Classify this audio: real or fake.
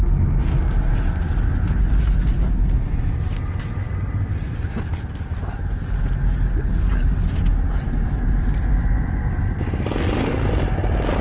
real